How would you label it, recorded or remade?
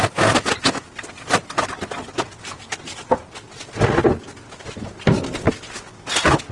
recorded